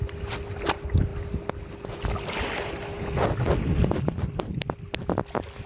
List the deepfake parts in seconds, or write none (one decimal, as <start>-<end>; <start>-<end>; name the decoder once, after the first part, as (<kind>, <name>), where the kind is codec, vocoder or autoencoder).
none